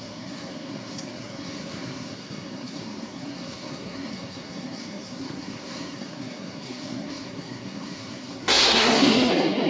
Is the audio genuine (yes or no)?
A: no